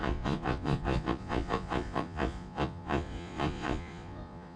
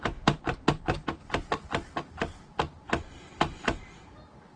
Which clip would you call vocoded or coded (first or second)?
first